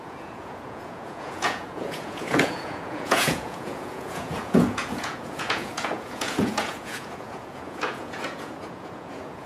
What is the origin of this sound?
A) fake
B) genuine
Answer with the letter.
A